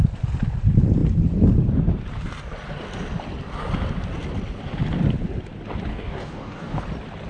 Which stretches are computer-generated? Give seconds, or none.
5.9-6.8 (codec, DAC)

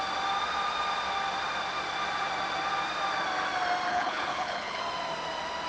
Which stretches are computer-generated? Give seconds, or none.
3.9-4.8 (codec, HILCodec)

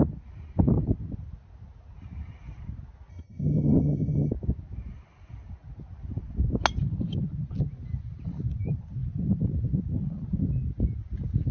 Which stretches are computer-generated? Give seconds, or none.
3.1-4.3 (vocoder, HiFi-GAN)

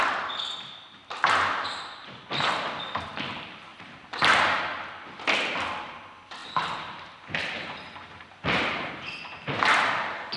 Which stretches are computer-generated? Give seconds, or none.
1.0-2.1 (vocoder, BigVGAN v2); 3.7-4.6; 6.4-8.9

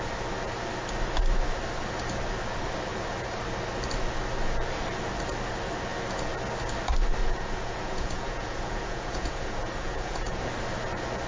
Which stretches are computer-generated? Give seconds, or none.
7.2-10.4 (vocoder, Vocos)

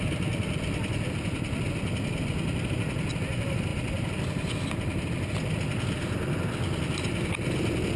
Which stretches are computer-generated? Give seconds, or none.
none